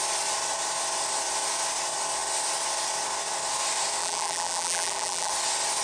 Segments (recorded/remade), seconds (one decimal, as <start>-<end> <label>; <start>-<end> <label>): 0.0-4.0 recorded; 4.0-5.3 remade; 5.3-5.8 recorded